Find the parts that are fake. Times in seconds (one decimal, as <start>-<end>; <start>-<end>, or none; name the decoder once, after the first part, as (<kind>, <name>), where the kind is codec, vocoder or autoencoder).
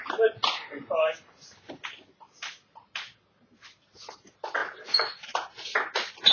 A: none